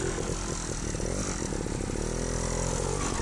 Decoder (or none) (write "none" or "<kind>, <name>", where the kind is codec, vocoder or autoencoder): none